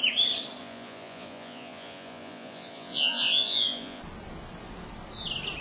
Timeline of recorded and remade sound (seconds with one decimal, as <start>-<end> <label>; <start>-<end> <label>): 0.0-0.6 recorded; 0.6-4.0 remade; 4.0-5.6 recorded